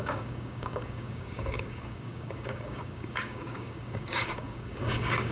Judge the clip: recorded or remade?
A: remade